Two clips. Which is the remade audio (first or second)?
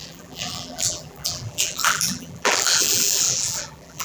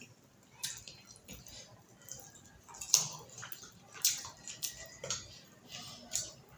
first